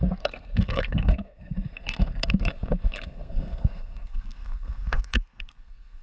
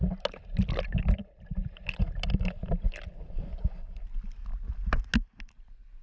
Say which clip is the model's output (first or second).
first